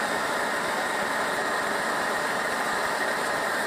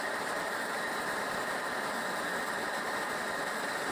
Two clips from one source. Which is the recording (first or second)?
first